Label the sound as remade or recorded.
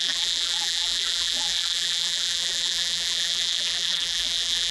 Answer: remade